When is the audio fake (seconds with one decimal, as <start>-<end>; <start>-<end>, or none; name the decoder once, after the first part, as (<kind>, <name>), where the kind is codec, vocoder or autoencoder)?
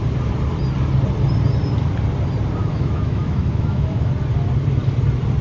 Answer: 2.6-4.1 (autoencoder, DAC-VAE)